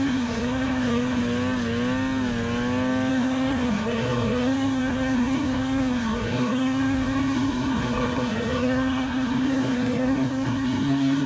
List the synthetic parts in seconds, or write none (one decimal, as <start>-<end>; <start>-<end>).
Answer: 0.0-1.2; 3.1-11.3